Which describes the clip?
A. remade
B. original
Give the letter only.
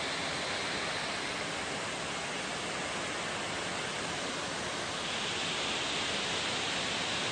B